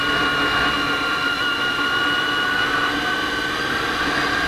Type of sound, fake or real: real